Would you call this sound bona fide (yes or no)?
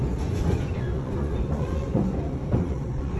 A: no